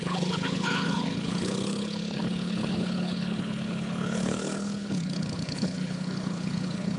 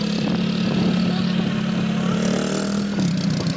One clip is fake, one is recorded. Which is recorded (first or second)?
second